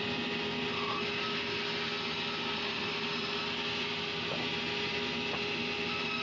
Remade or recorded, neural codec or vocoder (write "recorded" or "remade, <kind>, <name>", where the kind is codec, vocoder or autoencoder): recorded